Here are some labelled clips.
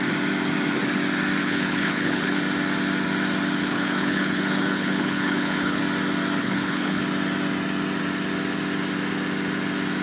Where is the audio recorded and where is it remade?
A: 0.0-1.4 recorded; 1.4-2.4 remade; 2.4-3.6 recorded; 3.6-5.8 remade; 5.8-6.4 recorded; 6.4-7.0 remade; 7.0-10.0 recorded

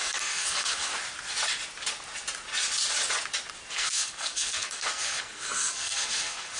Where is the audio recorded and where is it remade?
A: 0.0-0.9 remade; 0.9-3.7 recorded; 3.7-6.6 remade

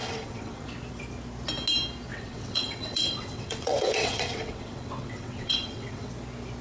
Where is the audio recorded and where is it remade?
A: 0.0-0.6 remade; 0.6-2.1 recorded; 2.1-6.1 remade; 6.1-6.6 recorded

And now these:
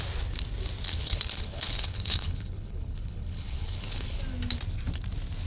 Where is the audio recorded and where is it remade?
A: 0.0-0.9 recorded; 0.9-4.2 remade; 4.2-5.5 recorded

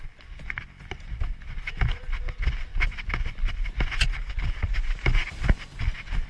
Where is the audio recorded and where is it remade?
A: 0.0-6.3 recorded

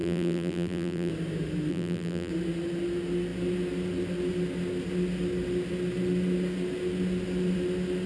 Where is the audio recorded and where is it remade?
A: 0.0-1.1 remade; 1.1-1.7 recorded; 1.7-2.3 remade; 2.3-8.1 recorded